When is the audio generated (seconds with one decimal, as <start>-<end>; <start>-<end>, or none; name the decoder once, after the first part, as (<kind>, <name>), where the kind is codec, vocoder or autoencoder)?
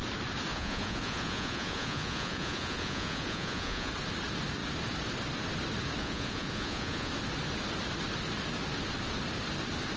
0.5-3.9 (vocoder, Vocos); 6.0-7.1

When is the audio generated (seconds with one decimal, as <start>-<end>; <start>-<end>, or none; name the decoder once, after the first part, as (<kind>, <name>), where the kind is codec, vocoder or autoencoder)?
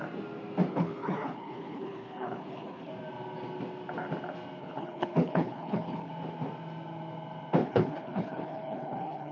0.7-2.9 (codec, HILCodec); 4.6-6.1; 7.6-9.3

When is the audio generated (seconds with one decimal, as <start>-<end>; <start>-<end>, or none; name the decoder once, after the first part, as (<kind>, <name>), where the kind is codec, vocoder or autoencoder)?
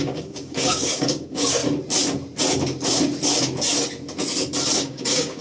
0.0-1.6 (codec, DAC); 4.8-5.4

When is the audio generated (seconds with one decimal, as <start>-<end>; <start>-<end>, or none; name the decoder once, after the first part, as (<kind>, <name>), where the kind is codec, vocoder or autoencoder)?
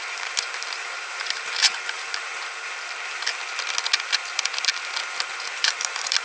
0.0-2.3 (vocoder, BigVGAN v2); 5.3-6.2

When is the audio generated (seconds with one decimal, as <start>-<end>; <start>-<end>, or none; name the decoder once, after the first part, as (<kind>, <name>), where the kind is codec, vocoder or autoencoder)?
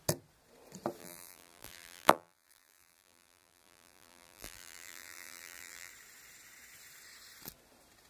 1.0-5.9 (vocoder, BigVGAN v2)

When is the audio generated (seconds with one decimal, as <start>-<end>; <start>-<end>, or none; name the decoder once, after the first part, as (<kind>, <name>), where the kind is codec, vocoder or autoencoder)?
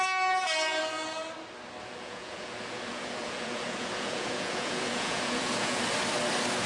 1.8-5.8 (vocoder, Vocos)